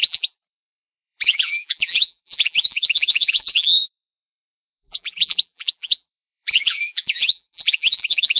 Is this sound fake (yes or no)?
yes